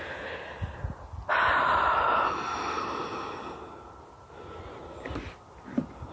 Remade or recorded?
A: recorded